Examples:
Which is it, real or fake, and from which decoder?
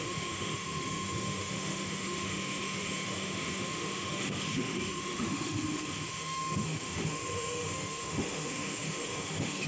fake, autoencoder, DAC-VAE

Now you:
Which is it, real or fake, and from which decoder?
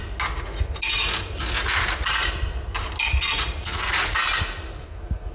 real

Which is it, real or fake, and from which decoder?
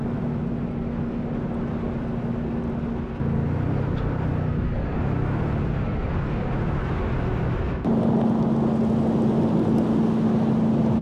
real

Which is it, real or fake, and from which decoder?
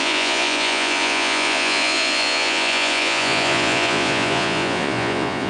fake, vocoder, Vocos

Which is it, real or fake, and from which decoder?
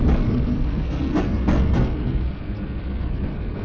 fake, codec, SNAC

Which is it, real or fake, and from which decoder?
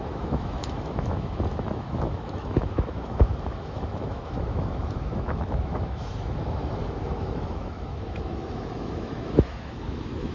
fake, autoencoder, DAC-VAE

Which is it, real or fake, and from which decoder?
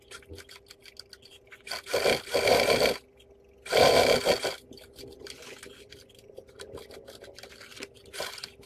real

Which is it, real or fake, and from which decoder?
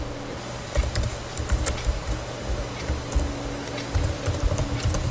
real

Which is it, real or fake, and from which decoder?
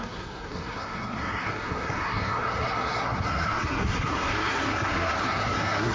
fake, codec, SNAC